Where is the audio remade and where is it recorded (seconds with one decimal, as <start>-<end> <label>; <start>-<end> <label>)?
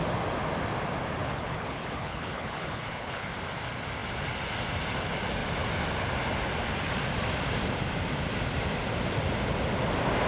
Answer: 0.0-1.2 recorded; 1.2-3.3 remade; 3.3-10.3 recorded